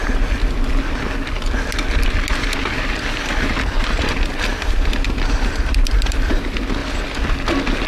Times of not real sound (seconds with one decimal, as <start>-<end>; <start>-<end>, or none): 2.9-6.8